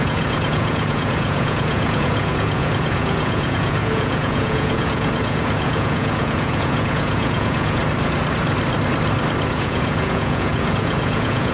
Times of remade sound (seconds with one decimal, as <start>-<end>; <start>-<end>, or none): 0.0-7.8; 9.5-11.5